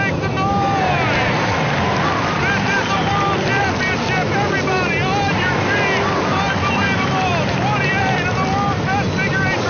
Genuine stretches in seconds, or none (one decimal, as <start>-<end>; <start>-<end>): 0.0-9.7